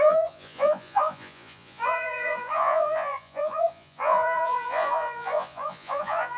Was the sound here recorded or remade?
remade